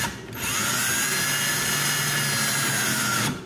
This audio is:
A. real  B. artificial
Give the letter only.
A